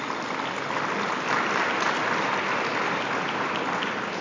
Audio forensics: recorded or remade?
recorded